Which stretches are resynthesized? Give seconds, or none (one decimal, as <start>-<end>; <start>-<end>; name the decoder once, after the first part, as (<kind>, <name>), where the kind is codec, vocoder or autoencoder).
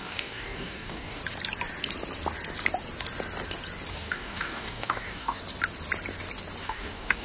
0.0-1.2 (codec, DAC); 3.9-5.4; 6.6-7.2